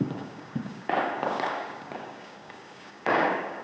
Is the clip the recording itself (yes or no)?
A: no